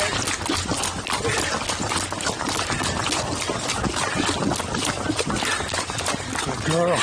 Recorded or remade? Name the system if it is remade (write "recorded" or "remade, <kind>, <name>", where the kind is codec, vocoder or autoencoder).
recorded